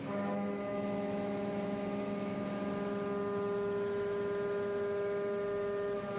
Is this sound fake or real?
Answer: fake